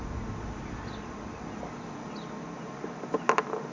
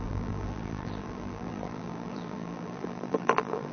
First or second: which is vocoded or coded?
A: second